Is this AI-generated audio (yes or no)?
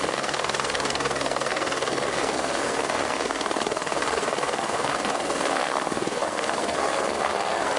yes